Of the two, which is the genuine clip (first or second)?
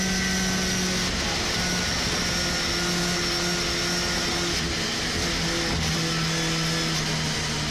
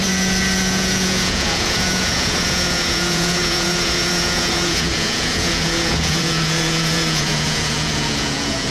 first